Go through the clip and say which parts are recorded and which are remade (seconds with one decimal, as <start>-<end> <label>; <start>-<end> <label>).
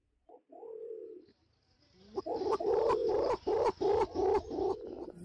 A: 0.0-2.2 remade; 2.2-3.0 recorded; 3.0-3.6 remade; 3.6-5.2 recorded